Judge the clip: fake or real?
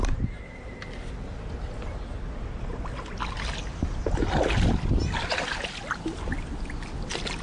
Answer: real